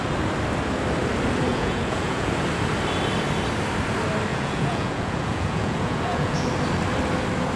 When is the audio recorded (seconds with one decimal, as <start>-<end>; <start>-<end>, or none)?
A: 0.0-1.5; 2.3-4.3; 6.5-7.6